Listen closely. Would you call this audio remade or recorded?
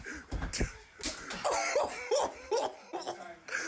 recorded